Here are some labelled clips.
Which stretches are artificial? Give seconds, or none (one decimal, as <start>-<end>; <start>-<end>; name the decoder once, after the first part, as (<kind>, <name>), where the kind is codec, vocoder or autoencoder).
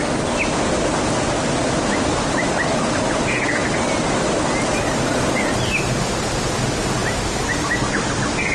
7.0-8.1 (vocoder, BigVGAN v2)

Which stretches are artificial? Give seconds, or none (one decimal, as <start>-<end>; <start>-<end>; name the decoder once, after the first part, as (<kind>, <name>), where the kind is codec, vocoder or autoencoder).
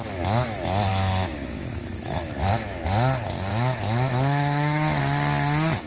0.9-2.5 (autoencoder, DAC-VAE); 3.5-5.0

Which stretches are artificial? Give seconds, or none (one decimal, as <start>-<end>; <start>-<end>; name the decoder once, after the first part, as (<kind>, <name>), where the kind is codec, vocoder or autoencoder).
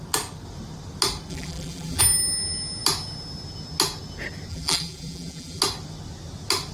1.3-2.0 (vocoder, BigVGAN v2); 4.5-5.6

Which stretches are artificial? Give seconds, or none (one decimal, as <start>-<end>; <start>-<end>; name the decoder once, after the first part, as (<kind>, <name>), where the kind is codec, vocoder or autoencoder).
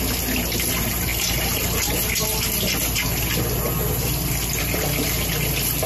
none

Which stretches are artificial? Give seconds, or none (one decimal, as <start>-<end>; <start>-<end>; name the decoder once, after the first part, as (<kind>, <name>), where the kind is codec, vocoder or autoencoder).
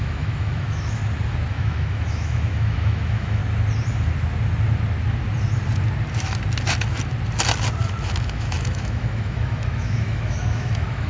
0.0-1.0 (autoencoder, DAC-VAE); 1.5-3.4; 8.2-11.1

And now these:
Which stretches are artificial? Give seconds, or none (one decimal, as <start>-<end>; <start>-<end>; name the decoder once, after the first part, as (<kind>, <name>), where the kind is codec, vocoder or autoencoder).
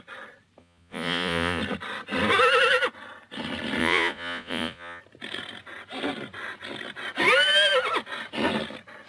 0.6-1.6 (vocoder, Vocos); 3.8-5.0